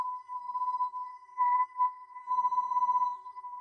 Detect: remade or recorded remade